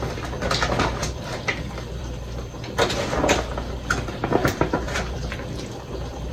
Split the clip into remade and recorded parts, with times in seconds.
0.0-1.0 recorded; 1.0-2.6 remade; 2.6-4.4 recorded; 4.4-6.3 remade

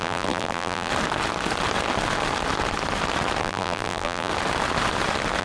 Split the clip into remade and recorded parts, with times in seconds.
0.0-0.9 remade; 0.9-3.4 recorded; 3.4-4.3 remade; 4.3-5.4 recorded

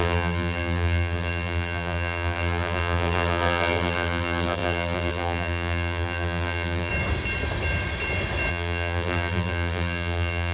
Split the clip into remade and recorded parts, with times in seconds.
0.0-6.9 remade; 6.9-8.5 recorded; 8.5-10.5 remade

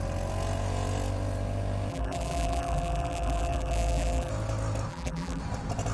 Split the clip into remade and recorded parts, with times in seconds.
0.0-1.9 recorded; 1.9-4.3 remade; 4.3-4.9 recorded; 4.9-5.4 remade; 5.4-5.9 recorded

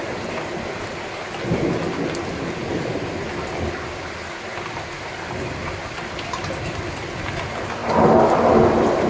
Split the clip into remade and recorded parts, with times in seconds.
0.0-9.1 recorded

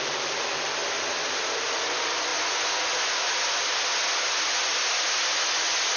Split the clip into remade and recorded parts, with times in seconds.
0.0-6.0 recorded

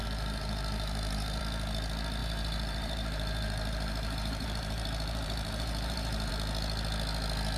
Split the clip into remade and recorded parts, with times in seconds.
0.0-1.4 remade; 1.4-2.2 recorded; 2.2-6.3 remade; 6.3-7.6 recorded